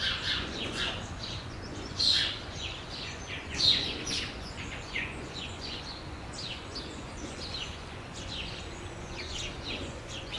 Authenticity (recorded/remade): remade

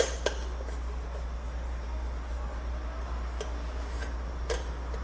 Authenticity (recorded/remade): recorded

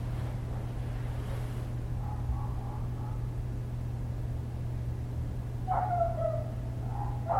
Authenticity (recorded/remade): recorded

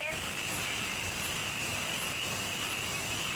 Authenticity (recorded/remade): recorded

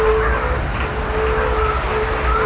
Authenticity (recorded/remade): recorded